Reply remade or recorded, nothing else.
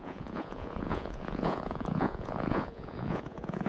remade